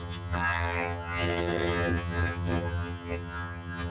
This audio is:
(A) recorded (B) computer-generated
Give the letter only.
B